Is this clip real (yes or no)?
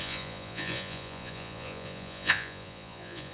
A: no